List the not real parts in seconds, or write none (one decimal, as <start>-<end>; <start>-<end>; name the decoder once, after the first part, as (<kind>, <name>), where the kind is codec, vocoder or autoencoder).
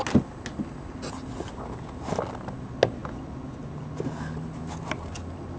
none